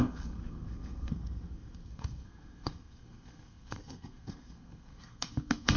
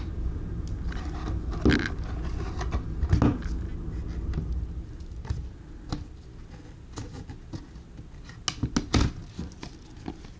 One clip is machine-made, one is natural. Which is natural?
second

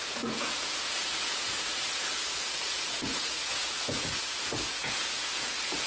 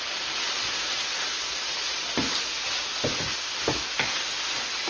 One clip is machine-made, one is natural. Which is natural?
second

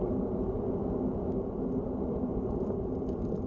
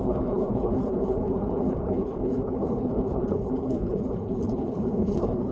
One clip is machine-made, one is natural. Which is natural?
first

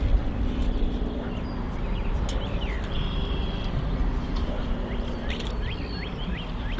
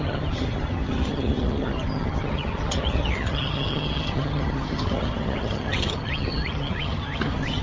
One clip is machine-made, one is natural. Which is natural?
first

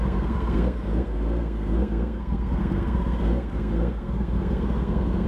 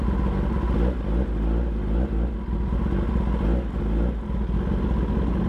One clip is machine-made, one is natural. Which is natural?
second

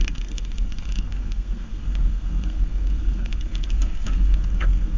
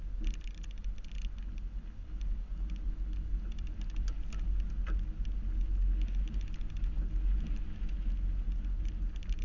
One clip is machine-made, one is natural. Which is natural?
second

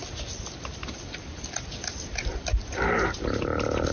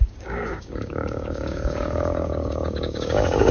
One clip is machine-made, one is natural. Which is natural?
first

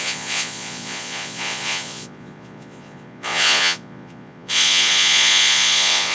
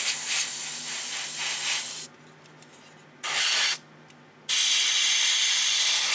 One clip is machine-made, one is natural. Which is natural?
second